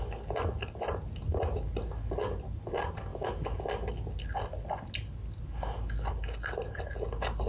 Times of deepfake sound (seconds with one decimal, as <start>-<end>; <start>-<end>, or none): none